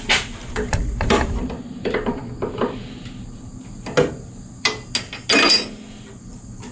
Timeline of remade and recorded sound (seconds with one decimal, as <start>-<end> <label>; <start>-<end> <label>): 0.0-2.2 remade; 2.2-6.2 recorded; 6.2-6.7 remade